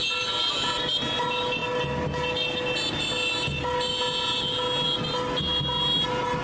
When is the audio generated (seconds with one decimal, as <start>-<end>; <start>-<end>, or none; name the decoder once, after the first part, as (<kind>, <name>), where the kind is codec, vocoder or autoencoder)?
none